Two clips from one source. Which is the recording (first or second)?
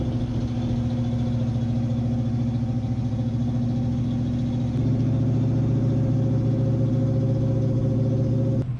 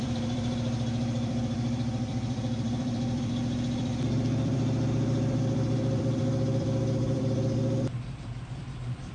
first